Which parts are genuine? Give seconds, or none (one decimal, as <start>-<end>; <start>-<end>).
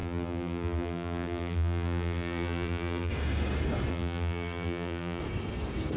3.1-3.9; 5.2-6.0